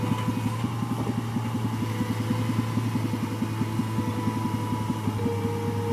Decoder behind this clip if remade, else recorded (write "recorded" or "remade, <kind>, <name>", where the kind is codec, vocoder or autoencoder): recorded